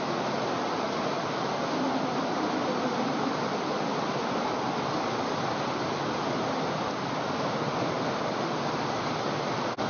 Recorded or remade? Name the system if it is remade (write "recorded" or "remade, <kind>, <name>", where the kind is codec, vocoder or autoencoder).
recorded